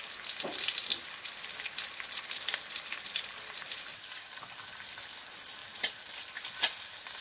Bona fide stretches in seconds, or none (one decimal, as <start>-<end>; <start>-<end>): 0.9-1.7